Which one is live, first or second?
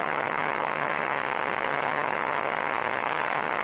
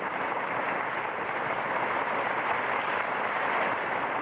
second